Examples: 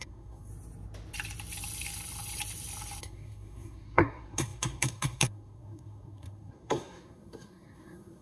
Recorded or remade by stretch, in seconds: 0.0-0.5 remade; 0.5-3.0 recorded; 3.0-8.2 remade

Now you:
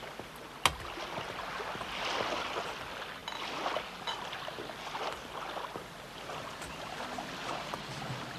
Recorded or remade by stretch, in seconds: 0.0-8.4 recorded

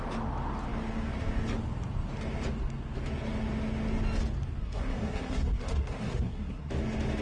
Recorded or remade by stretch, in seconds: 0.0-4.6 recorded; 4.6-6.7 remade; 6.7-7.2 recorded

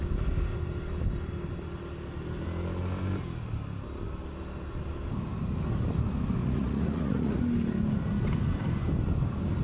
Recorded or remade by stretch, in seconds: 0.0-6.4 recorded; 6.4-7.4 remade; 7.4-9.6 recorded

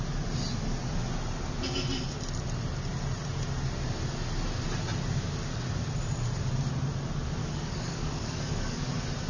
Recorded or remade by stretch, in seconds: 0.0-7.4 recorded; 7.4-8.9 remade; 8.9-9.3 recorded

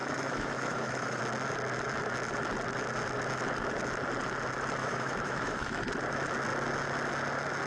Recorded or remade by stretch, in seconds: 0.0-1.2 remade; 1.2-4.8 recorded; 4.8-5.9 remade; 5.9-7.7 recorded

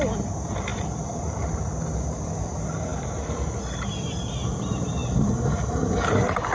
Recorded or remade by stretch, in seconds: 0.0-6.5 recorded